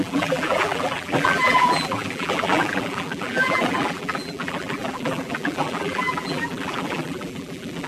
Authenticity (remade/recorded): remade